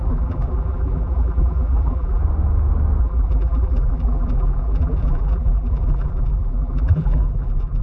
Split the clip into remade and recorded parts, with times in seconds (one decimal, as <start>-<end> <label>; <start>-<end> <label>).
0.0-2.2 remade; 2.2-3.0 recorded; 3.0-7.8 remade